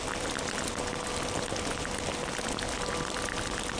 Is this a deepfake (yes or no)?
no